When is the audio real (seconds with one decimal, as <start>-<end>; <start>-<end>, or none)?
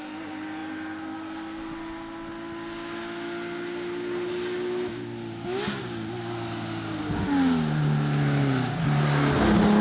0.0-9.8